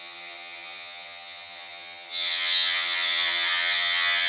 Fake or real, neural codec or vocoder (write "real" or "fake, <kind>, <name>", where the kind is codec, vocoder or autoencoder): fake, vocoder, HiFi-GAN